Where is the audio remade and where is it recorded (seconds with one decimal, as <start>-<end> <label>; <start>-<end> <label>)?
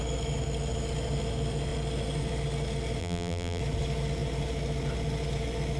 0.0-3.0 recorded; 3.0-3.6 remade; 3.6-5.8 recorded